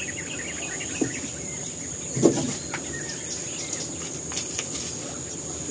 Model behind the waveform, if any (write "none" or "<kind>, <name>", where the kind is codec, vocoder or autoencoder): none